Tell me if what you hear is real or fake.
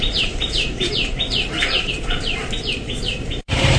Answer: fake